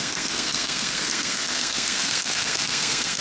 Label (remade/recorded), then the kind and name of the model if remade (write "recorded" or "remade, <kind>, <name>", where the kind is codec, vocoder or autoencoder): remade, codec, SNAC